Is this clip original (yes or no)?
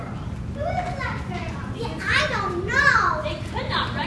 yes